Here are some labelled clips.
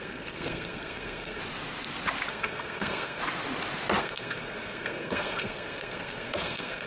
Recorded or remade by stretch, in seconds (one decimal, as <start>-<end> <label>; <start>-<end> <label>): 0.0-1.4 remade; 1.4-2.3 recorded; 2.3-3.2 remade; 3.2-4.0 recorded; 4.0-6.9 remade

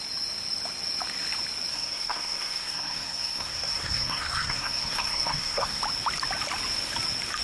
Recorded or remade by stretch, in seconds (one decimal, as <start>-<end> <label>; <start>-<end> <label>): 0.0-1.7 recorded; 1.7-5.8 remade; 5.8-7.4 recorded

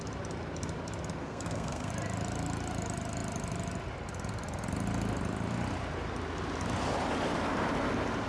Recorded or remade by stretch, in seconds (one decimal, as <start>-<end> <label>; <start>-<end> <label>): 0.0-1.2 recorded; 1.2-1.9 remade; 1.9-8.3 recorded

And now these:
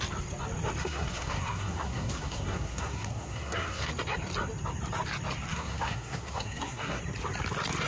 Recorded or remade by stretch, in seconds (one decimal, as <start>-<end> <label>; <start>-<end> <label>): 0.0-0.8 recorded; 0.8-3.9 remade; 3.9-5.5 recorded; 5.5-7.0 remade; 7.0-7.9 recorded